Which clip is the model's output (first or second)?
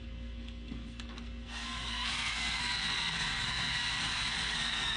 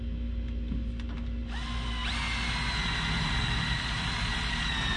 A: first